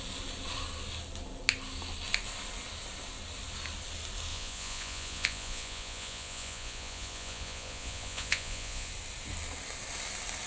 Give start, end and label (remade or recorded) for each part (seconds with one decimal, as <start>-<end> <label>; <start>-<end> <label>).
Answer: 0.0-4.3 recorded; 4.3-8.9 remade; 8.9-10.5 recorded

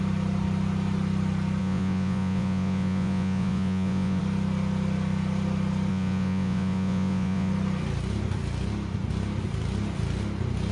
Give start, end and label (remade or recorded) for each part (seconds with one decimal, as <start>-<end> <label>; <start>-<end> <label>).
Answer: 0.0-1.6 recorded; 1.6-4.2 remade; 4.2-5.9 recorded; 5.9-7.5 remade; 7.5-10.7 recorded

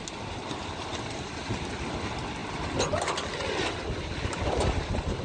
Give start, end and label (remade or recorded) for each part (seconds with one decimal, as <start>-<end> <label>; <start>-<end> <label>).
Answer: 0.0-5.2 recorded

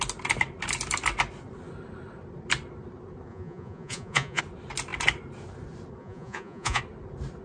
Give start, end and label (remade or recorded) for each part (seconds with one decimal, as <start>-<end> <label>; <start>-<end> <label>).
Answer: 0.0-3.3 recorded; 3.3-4.4 remade; 4.4-6.0 recorded; 6.0-6.8 remade; 6.8-7.4 recorded